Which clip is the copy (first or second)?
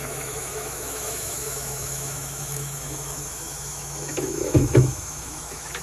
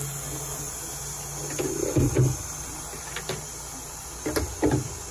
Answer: first